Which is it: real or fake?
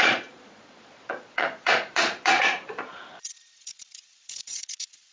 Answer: fake